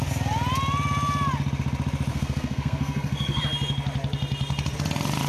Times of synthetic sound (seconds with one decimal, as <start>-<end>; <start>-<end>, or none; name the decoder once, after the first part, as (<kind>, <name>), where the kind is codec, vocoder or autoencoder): 2.1-3.4 (codec, SNAC)

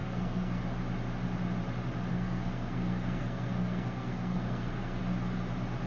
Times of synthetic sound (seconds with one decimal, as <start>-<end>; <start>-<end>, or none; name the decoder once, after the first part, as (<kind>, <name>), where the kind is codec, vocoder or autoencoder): 0.0-0.6 (codec, SNAC); 2.1-5.0

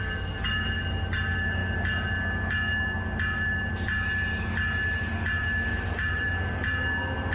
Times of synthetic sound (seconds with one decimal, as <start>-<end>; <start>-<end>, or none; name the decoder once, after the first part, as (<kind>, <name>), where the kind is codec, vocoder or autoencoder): 5.7-6.3 (vocoder, BigVGAN v2)

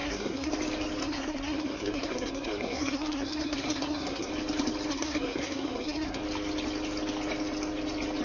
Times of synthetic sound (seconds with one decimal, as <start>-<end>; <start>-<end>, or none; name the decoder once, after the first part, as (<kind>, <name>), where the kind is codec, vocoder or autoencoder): 0.0-0.5 (codec, SNAC); 1.0-4.3; 4.9-6.2